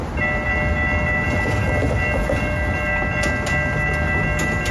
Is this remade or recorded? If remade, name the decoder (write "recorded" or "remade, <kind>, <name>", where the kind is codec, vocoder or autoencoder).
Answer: recorded